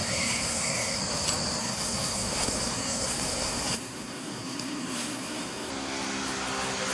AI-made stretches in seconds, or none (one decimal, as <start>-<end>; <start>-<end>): 0.0-1.0; 1.6-5.7